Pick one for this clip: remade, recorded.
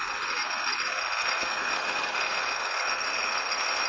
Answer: recorded